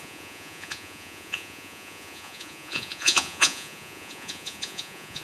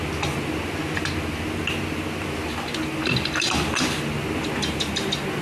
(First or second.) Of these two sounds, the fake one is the first